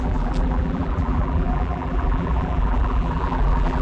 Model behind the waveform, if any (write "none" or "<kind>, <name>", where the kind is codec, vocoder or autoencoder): vocoder, BigVGAN v2